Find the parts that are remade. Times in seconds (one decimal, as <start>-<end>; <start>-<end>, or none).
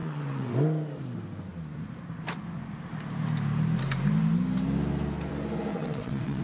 0.0-0.5; 5.7-6.4